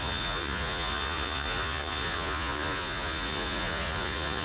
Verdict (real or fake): fake